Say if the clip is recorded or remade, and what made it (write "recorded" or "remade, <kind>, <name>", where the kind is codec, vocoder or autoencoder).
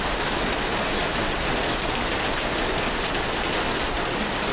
recorded